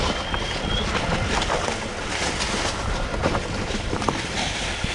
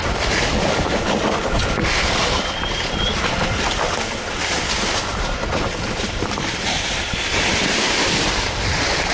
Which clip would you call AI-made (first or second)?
second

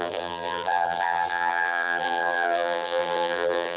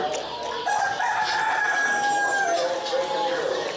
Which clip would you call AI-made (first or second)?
first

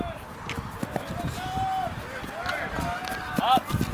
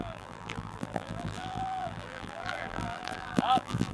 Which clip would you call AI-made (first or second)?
second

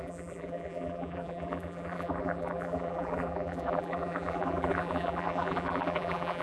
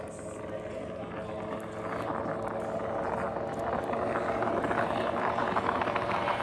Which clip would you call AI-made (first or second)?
first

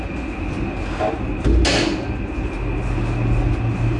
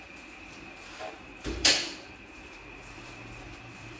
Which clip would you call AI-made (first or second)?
second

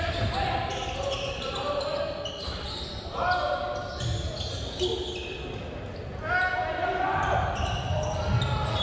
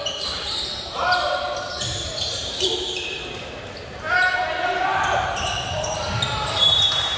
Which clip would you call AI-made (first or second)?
second